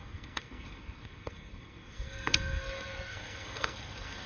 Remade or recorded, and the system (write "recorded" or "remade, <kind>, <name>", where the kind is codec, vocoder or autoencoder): remade, codec, SNAC